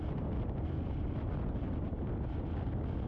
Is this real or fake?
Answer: real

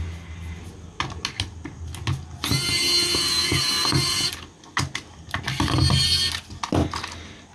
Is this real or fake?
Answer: real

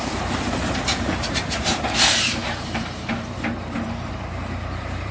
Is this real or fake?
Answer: fake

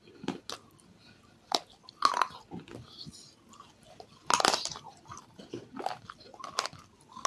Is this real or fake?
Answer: real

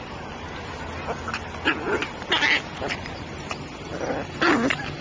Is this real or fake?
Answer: real